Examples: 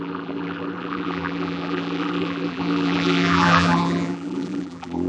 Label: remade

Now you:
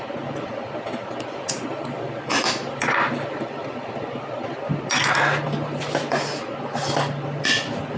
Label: recorded